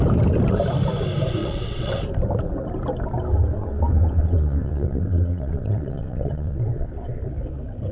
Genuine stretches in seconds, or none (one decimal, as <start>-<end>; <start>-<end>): 0.0-1.4; 2.0-3.5; 7.2-7.9